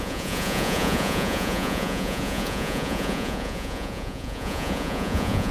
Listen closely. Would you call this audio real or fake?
fake